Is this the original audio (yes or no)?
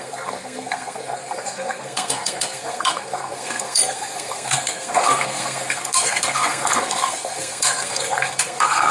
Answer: no